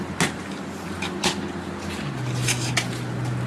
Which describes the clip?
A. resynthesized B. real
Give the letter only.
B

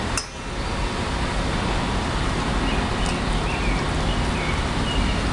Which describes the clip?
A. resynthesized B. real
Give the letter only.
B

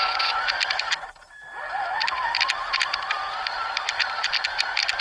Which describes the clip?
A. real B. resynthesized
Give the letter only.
A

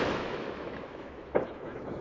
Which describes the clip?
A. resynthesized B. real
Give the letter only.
A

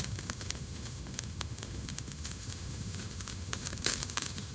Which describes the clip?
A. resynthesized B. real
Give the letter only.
A